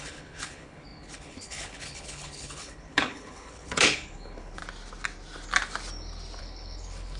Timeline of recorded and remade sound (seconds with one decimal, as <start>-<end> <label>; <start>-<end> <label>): 0.0-4.6 remade; 4.6-6.4 recorded; 6.4-7.2 remade